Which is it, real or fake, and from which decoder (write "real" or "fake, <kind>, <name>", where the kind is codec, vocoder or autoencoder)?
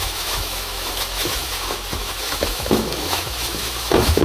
fake, autoencoder, DAC-VAE